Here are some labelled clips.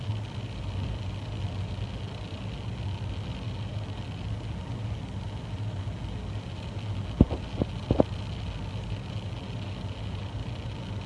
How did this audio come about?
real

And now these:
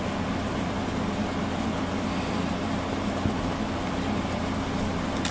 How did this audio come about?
real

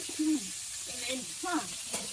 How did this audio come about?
fake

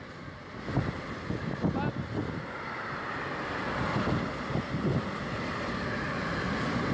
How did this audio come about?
real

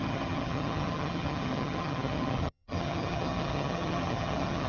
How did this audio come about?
fake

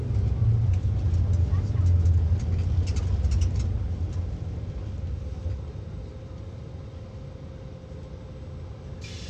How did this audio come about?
real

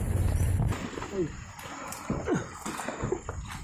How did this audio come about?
real